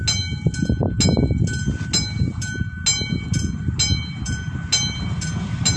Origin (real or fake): real